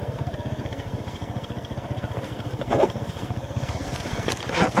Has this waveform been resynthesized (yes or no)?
yes